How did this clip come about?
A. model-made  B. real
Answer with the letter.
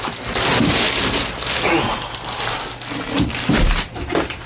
B